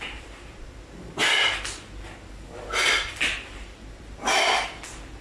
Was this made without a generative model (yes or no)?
yes